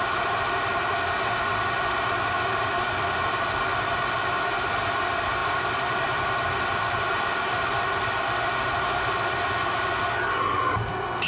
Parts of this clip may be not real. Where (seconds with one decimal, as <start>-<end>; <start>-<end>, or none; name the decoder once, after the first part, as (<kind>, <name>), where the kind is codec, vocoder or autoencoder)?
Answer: 5.4-7.9 (vocoder, BigVGAN v2)